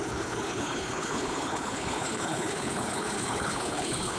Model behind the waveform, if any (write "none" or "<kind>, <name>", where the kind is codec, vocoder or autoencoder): codec, HILCodec